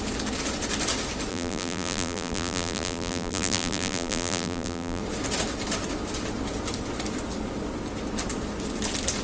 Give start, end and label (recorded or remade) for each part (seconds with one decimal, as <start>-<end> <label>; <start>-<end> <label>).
0.0-1.3 recorded; 1.3-5.0 remade; 5.0-9.2 recorded